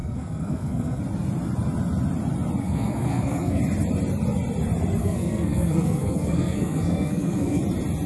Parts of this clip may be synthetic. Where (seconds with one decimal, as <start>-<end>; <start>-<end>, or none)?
0.0-1.0; 2.6-3.6; 5.0-7.6